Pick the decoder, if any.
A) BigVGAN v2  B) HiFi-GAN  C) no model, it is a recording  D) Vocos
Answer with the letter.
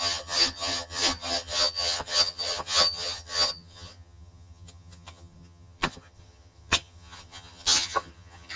B